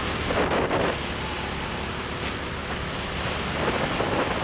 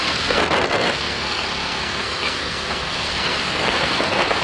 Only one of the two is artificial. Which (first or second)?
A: second